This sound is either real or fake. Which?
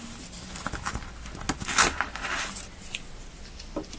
real